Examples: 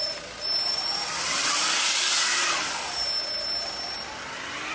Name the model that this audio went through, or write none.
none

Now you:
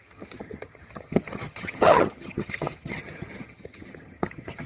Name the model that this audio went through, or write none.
vocoder, HiFi-GAN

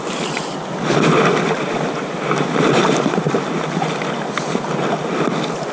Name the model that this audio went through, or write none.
none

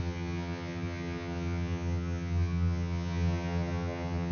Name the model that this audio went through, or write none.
vocoder, HiFi-GAN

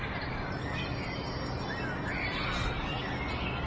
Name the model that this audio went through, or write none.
none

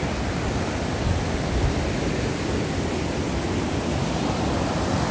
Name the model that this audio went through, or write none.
none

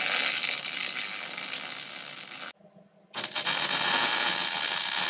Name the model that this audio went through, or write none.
none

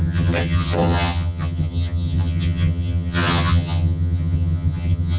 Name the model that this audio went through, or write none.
vocoder, HiFi-GAN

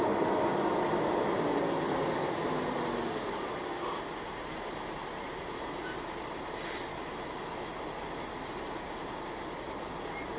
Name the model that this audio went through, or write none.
none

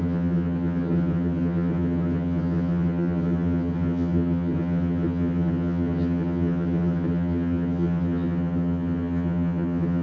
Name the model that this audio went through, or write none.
vocoder, HiFi-GAN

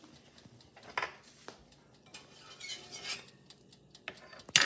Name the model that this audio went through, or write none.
none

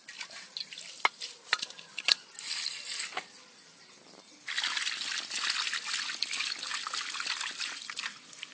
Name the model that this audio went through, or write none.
none